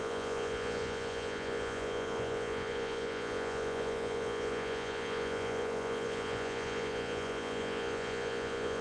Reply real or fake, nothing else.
fake